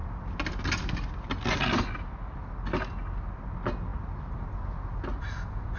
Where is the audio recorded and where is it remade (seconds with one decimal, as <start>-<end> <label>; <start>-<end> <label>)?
0.0-5.8 recorded